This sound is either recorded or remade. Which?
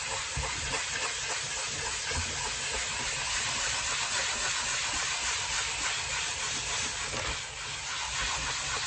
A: recorded